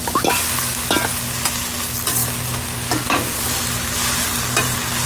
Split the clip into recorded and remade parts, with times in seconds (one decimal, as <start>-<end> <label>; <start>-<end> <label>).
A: 0.0-5.1 recorded